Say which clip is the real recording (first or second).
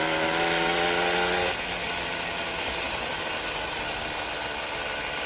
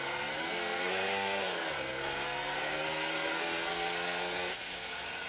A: first